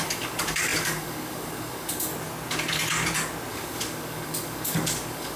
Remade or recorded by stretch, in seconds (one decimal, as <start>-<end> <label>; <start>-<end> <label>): 0.0-2.1 remade; 2.1-3.5 recorded; 3.5-5.4 remade